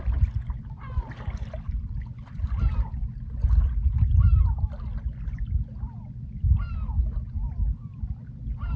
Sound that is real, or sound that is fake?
real